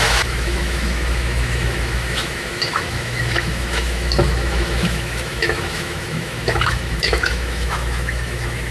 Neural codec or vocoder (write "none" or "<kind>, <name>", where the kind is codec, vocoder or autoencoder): autoencoder, DAC-VAE